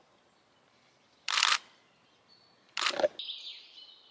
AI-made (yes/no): no